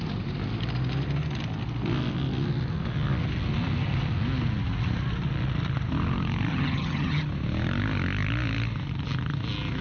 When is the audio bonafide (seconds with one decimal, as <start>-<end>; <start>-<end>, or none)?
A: 0.0-6.5; 7.3-9.8